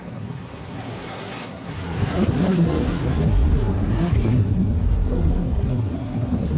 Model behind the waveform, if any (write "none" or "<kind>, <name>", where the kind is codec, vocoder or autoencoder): codec, SNAC